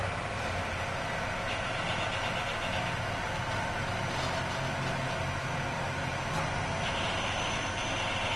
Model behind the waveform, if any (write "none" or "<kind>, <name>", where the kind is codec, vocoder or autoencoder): none